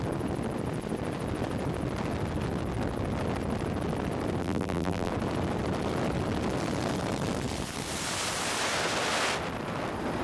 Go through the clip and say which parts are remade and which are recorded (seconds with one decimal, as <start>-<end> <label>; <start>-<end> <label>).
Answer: 0.0-4.4 recorded; 4.4-5.1 remade; 5.1-10.2 recorded